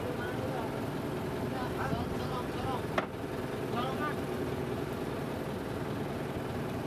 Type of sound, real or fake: real